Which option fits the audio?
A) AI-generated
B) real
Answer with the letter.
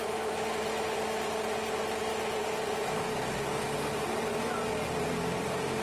B